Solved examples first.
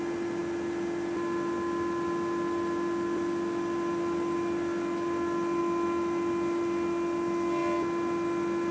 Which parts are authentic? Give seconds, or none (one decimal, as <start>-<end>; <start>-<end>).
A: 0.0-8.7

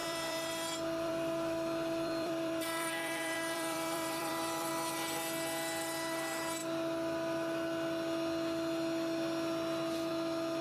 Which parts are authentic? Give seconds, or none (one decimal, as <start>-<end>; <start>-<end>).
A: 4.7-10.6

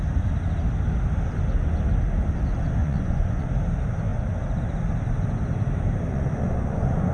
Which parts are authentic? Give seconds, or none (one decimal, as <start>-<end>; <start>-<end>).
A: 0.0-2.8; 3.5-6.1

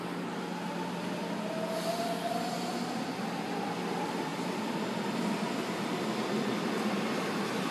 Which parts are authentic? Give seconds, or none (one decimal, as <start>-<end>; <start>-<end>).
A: 0.0-7.7

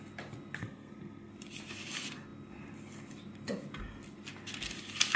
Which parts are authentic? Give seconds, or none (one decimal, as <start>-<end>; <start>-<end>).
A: 0.0-0.6; 1.3-5.2

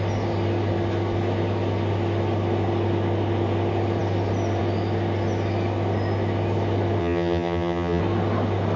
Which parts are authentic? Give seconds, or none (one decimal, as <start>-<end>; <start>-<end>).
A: 0.0-7.0; 8.0-8.8

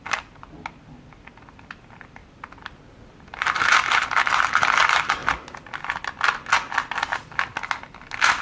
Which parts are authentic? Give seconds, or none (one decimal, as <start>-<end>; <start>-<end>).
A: 0.0-8.4